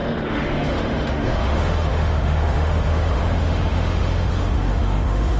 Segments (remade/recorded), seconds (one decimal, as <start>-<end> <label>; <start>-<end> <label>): 0.0-5.4 remade